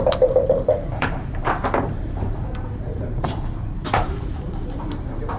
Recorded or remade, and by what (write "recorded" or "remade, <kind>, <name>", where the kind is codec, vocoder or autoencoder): remade, vocoder, BigVGAN v2